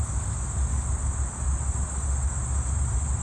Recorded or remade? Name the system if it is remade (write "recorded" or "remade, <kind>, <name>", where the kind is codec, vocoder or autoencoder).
recorded